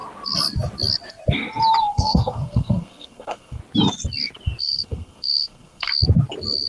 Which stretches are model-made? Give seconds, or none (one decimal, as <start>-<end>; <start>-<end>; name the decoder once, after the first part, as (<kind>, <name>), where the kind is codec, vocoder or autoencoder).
1.8-3.6 (codec, SNAC); 4.6-5.9